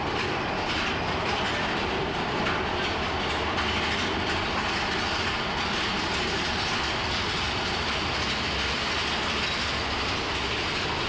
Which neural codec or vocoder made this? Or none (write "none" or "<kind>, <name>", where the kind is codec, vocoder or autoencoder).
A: none